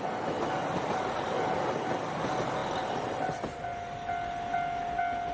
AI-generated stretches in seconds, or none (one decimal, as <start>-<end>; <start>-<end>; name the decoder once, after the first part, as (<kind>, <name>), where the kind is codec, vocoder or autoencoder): none